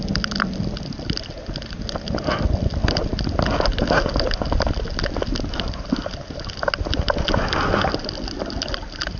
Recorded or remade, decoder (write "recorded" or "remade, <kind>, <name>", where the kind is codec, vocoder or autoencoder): recorded